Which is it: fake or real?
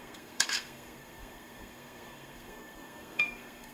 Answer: fake